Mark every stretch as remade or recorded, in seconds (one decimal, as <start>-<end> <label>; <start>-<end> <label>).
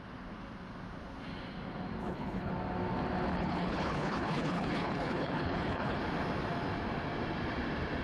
0.0-2.0 recorded; 2.0-2.5 remade; 2.5-3.3 recorded; 3.3-6.0 remade; 6.0-8.0 recorded